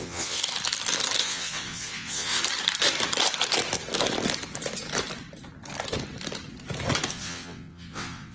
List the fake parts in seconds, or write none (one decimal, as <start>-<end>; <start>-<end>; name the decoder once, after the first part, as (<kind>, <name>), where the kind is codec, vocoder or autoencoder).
0.0-0.4 (vocoder, WaveNeXt); 1.2-2.4; 7.1-8.3